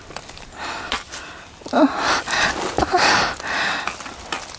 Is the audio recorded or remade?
recorded